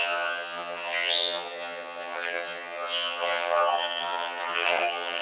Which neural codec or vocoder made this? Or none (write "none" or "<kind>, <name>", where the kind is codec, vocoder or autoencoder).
vocoder, HiFi-GAN